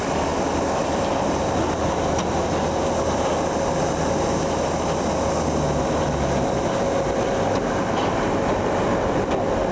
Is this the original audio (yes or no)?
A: yes